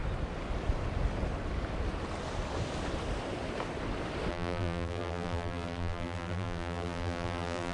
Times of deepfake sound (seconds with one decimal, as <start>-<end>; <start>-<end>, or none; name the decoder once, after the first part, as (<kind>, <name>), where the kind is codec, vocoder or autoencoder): 4.3-7.7 (vocoder, BigVGAN v2)